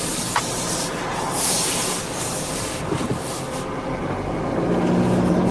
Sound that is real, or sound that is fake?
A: real